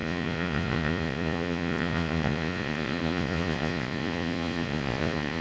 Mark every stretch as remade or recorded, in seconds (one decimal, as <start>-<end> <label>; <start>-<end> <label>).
0.0-5.4 remade